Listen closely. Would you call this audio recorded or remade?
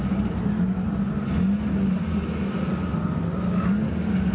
recorded